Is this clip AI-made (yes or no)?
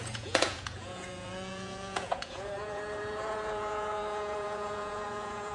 yes